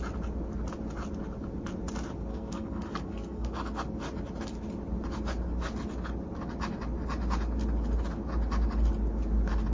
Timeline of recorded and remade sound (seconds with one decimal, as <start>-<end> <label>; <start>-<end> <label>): 0.0-2.3 recorded; 2.3-3.5 remade; 3.5-9.7 recorded